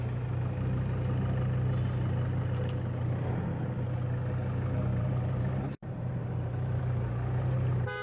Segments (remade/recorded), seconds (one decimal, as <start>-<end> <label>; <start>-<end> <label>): 0.0-4.9 recorded; 4.9-6.8 remade; 6.8-8.0 recorded